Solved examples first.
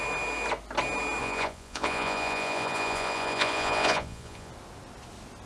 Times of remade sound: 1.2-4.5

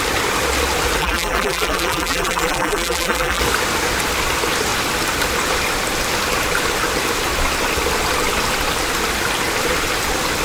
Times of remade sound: 1.0-3.4

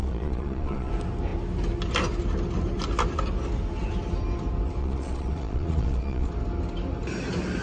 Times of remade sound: 0.0-0.9; 4.8-6.3

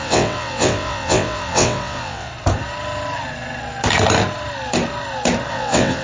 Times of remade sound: 0.0-2.3; 5.5-6.0

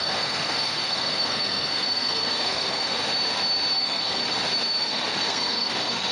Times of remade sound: 0.0-3.0; 3.8-4.2; 4.8-6.1

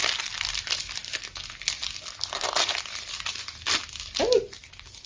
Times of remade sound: none

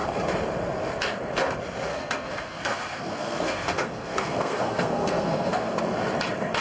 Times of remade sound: 1.9-5.8

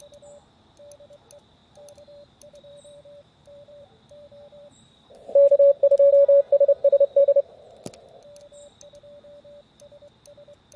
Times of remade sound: 1.6-6.1